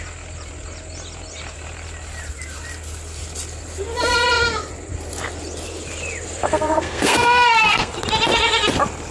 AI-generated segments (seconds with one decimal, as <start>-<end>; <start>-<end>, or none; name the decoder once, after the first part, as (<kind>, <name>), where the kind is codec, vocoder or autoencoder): 6.4-7.9 (codec, SNAC)